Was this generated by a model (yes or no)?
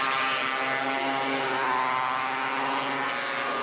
no